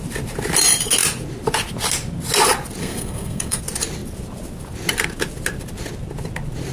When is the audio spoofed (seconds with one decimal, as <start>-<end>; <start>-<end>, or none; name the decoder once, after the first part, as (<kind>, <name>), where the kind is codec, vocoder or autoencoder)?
2.8-3.6 (codec, SNAC)